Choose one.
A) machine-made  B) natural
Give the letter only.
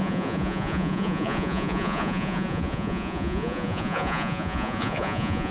A